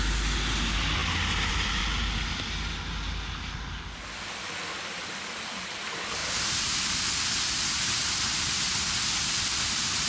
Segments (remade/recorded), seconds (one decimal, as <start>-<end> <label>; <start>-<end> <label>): 0.0-10.1 recorded